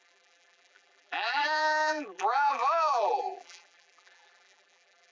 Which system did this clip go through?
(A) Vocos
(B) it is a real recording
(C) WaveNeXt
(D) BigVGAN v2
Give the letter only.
D